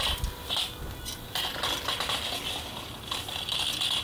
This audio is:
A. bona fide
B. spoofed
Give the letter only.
A